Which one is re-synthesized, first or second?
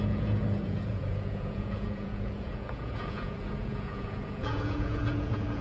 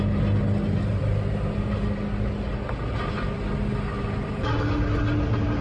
first